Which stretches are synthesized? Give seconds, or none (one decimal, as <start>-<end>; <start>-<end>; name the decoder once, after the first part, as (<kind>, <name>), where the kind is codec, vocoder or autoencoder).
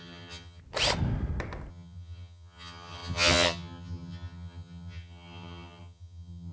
0.0-0.6 (vocoder, HiFi-GAN); 1.7-6.5